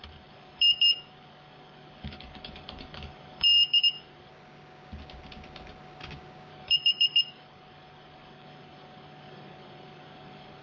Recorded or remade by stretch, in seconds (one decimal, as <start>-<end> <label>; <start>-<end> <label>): 0.0-4.3 remade; 4.3-6.5 recorded; 6.5-10.6 remade